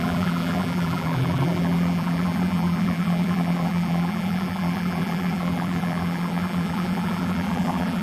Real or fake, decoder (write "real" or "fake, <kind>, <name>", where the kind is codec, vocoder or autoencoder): fake, vocoder, BigVGAN v2